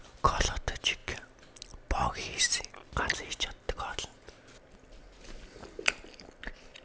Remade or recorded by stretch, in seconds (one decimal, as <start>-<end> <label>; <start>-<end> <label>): 0.0-6.8 recorded